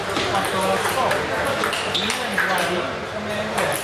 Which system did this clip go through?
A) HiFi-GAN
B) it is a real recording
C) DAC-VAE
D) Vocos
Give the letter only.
B